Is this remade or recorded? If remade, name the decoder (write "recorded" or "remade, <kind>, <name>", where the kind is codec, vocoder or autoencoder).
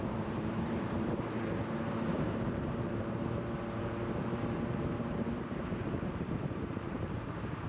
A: remade, vocoder, BigVGAN v2